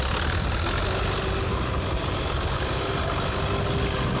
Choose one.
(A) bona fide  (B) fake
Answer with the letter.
A